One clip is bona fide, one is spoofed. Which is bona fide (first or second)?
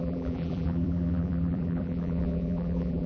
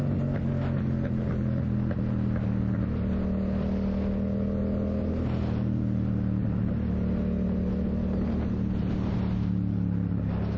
second